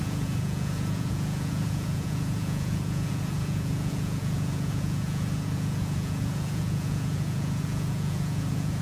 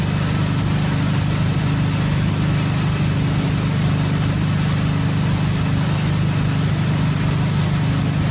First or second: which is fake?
first